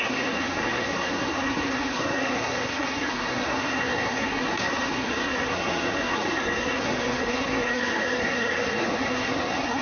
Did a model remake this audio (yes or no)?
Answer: yes